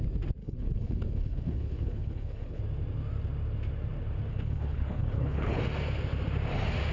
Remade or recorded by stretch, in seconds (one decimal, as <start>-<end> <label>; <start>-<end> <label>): 0.0-0.4 recorded; 0.4-2.6 remade; 2.6-4.3 recorded; 4.3-5.6 remade; 5.6-6.9 recorded